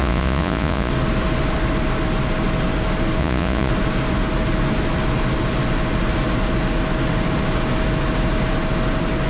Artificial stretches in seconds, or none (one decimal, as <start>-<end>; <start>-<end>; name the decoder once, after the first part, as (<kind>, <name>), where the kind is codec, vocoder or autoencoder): 0.0-0.9 (vocoder, Vocos); 3.2-3.7